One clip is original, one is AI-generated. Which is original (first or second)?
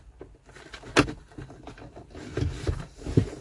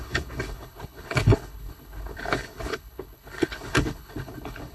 first